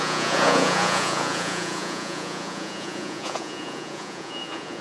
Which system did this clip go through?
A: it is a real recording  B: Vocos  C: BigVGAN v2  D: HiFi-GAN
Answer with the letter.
B